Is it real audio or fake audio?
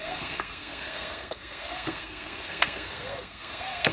fake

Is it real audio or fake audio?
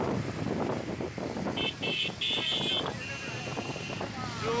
real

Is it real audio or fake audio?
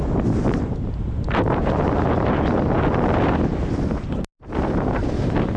real